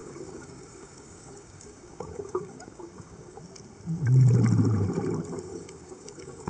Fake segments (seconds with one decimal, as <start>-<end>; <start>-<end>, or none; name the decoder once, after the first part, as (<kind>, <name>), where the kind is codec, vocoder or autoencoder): 0.0-3.4 (codec, DAC); 5.5-6.5